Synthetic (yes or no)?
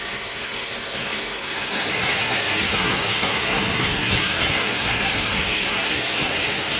yes